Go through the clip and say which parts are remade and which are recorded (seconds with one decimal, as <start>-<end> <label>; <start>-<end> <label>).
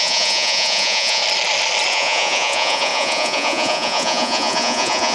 0.0-1.2 remade; 1.2-1.9 recorded; 1.9-5.1 remade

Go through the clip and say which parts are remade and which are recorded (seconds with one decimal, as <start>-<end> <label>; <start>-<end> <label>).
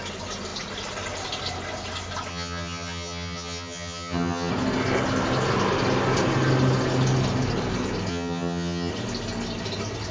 0.0-2.3 recorded; 2.3-4.5 remade; 4.5-8.1 recorded; 8.1-8.9 remade; 8.9-10.1 recorded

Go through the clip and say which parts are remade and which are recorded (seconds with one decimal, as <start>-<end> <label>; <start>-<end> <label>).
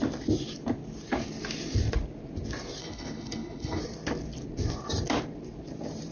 0.0-2.8 recorded; 2.8-3.8 remade; 3.8-6.1 recorded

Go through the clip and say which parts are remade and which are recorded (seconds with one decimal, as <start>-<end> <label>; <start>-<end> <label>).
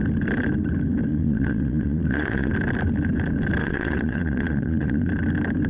0.0-1.1 recorded; 1.1-2.5 remade; 2.5-3.6 recorded; 3.6-5.1 remade; 5.1-5.7 recorded